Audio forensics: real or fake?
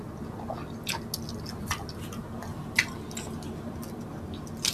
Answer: real